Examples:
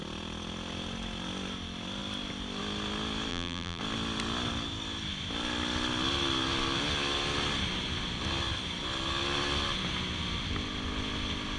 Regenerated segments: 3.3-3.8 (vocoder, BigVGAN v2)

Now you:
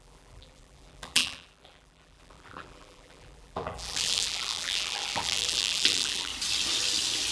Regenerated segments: 0.0-6.3 (vocoder, BigVGAN v2)

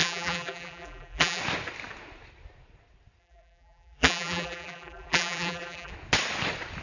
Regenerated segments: 0.0-1.4 (vocoder, BigVGAN v2); 3.2-5.9

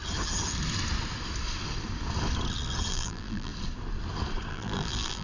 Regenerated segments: 2.9-3.5 (vocoder, BigVGAN v2); 4.5-5.2

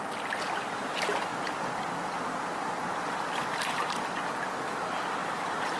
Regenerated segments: 5.2-5.8 (vocoder, BigVGAN v2)